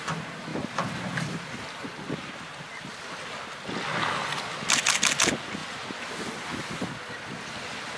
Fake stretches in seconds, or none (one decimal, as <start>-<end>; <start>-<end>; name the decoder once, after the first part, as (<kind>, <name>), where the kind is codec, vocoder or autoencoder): 0.5-2.9 (vocoder, BigVGAN v2)